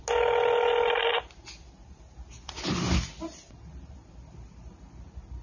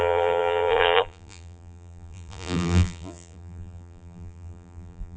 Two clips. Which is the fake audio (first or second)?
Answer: second